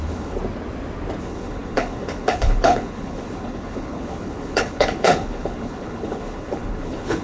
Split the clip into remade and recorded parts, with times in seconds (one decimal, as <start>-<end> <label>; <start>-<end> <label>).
0.0-0.4 remade; 0.4-1.2 recorded; 1.2-7.2 remade